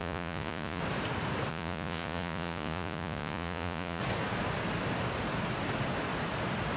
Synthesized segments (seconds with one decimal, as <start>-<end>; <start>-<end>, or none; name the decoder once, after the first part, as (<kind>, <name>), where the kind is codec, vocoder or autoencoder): 0.0-0.8 (vocoder, Vocos); 1.5-4.0